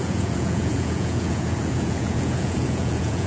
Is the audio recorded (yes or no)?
no